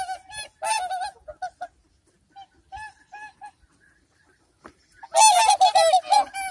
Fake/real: real